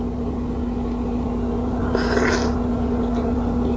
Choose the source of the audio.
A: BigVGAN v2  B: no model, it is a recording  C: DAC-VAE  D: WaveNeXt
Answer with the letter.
B